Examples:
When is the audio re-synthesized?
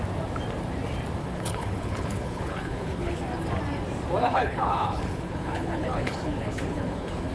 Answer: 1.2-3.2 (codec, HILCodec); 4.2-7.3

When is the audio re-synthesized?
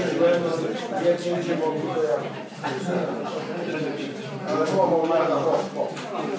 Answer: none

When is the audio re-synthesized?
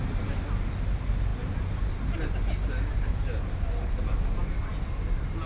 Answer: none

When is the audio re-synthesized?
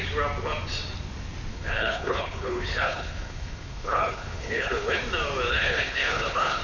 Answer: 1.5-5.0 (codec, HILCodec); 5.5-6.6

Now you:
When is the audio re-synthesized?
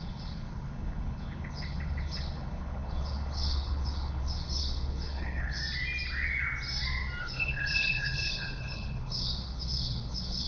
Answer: 0.0-5.6 (codec, HILCodec); 7.2-10.5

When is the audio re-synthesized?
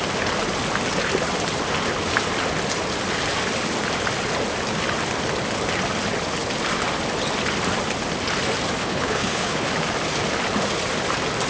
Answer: 8.8-9.7 (codec, HILCodec)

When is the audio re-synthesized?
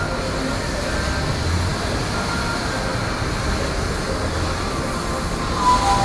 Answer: none